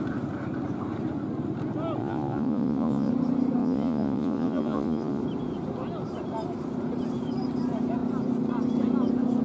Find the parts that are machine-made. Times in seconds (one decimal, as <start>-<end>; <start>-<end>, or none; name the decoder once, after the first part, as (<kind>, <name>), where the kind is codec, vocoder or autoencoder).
2.0-3.1 (vocoder, Vocos); 3.6-5.2